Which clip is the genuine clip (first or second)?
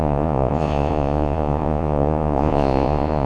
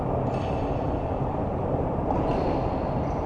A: second